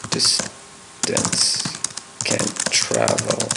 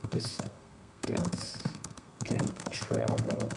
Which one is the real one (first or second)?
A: first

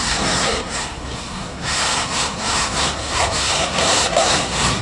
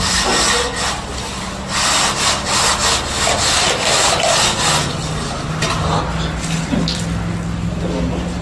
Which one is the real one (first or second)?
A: second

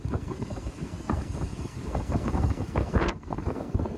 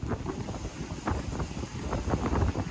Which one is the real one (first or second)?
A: second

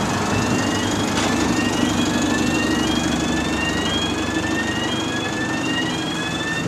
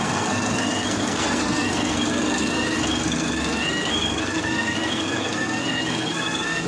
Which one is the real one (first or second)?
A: first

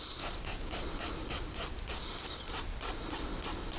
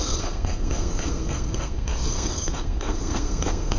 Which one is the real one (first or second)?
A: first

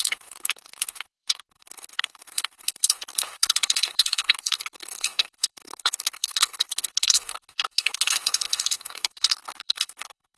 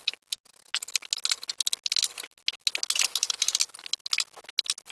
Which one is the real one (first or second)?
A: second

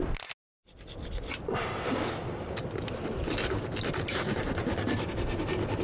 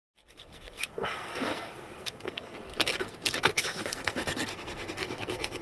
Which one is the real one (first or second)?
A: first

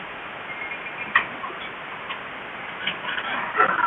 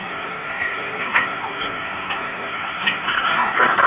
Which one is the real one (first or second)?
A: first